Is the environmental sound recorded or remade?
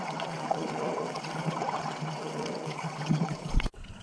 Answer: remade